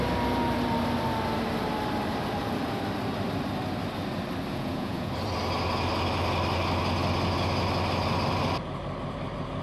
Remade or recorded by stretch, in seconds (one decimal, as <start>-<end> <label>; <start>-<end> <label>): 0.0-4.5 recorded; 4.5-5.1 remade; 5.1-9.6 recorded